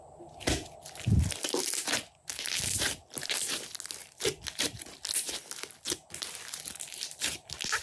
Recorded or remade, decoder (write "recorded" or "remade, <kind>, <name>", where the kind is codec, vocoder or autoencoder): recorded